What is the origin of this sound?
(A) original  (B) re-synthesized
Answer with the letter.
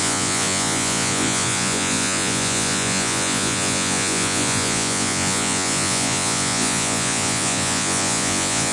B